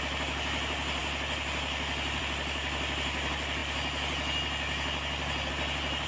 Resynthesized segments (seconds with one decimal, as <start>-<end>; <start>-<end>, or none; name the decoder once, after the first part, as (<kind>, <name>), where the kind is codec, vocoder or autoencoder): none